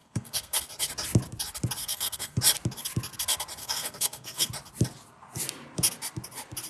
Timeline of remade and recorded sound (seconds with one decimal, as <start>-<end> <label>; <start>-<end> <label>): 0.0-0.6 remade; 0.6-1.8 recorded; 1.8-2.4 remade; 2.4-3.6 recorded; 3.6-4.5 remade; 4.5-6.7 recorded